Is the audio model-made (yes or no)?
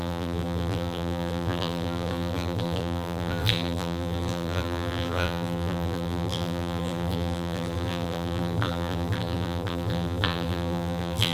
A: yes